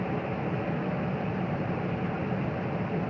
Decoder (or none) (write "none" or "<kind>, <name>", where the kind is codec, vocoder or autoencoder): none